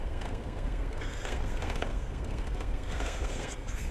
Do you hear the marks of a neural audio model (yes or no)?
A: yes